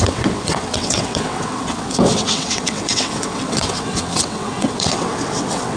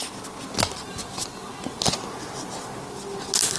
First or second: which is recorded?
second